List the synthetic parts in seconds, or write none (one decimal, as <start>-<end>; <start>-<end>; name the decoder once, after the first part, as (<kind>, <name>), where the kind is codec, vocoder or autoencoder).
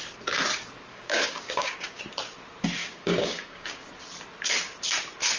0.9-2.0 (codec, DAC); 2.8-3.9